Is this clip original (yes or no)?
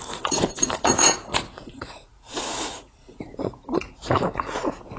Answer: no